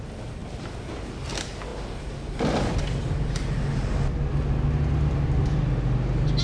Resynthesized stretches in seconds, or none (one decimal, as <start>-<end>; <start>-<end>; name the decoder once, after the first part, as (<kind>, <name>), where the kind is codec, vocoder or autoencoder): none